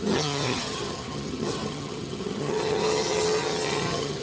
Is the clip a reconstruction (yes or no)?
yes